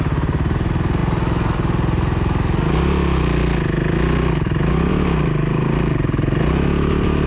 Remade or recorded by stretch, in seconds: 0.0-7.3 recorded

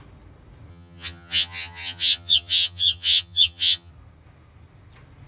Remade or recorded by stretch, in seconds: 0.0-0.7 recorded; 0.7-3.9 remade; 3.9-5.3 recorded